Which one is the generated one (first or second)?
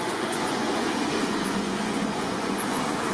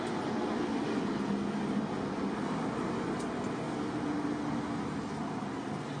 first